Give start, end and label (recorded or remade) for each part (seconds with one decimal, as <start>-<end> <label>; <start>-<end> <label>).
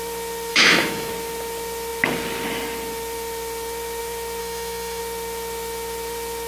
0.0-0.5 recorded; 0.5-1.1 remade; 1.1-4.4 recorded; 4.4-5.0 remade; 5.0-6.5 recorded